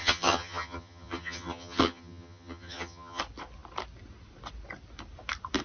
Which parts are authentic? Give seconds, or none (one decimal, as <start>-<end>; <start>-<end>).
3.2-5.6